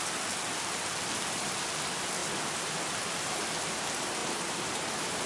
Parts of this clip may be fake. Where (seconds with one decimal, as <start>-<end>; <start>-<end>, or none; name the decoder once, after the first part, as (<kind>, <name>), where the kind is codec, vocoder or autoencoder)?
4.2-5.3 (vocoder, BigVGAN v2)